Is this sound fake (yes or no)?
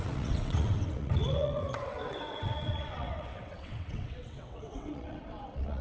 yes